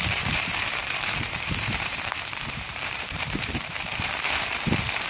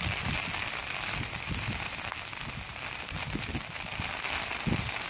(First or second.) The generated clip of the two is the first